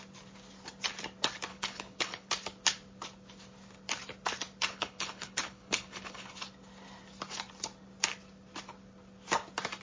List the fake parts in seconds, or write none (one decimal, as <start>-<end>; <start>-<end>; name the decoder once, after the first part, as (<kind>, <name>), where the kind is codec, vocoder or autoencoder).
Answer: 1.5-2.3 (codec, HILCodec); 4.7-6.3